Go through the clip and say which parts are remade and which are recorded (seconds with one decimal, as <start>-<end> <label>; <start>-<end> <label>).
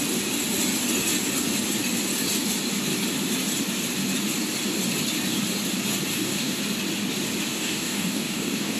0.0-6.1 recorded; 6.1-6.6 remade; 6.6-7.5 recorded; 7.5-8.8 remade